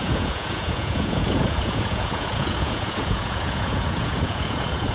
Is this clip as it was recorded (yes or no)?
no